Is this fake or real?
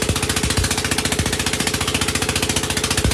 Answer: real